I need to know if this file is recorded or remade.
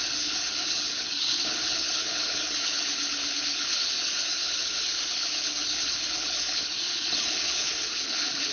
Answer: remade